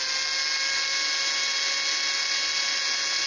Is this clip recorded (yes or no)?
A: yes